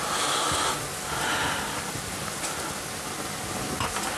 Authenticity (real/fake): real